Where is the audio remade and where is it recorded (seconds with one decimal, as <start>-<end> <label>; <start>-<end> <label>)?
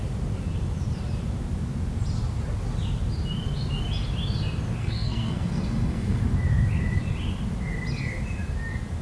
0.0-4.8 recorded; 4.8-6.2 remade; 6.2-9.0 recorded